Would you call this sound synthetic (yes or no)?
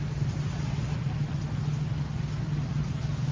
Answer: no